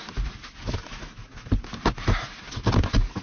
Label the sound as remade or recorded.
recorded